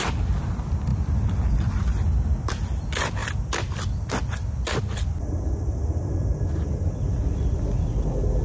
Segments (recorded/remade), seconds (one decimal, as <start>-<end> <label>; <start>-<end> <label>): 0.0-8.4 recorded